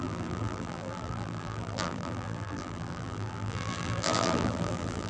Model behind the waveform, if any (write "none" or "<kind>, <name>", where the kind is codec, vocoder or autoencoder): vocoder, BigVGAN v2